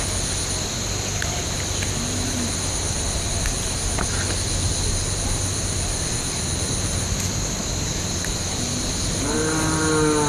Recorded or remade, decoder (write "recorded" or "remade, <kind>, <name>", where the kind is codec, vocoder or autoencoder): recorded